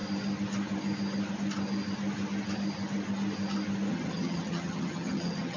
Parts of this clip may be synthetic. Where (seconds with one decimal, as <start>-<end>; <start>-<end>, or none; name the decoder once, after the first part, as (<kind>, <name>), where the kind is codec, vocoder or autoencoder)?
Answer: 3.9-5.6 (vocoder, HiFi-GAN)